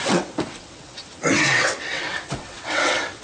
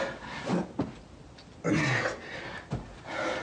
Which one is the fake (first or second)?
first